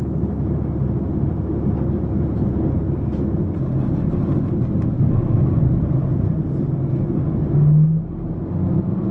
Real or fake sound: real